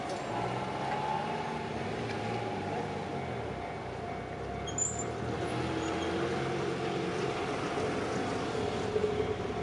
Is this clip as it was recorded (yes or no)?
yes